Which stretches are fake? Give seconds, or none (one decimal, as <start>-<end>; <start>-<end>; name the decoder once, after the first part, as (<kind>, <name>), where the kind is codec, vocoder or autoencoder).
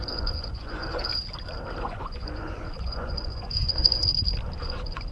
0.0-1.1 (vocoder, Vocos); 1.8-4.0; 4.6-5.1